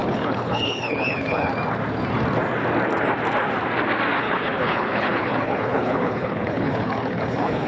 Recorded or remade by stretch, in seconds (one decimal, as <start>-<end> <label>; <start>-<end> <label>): 0.0-1.5 remade; 1.5-4.2 recorded; 4.2-7.7 remade